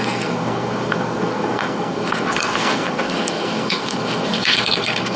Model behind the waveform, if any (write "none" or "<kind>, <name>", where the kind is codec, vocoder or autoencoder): codec, SNAC